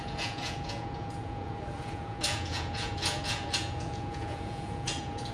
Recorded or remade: remade